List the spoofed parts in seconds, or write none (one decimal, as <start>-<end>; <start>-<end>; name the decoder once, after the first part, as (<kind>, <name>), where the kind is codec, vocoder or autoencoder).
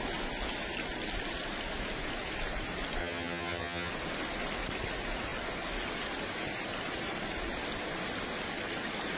3.0-3.9 (vocoder, HiFi-GAN)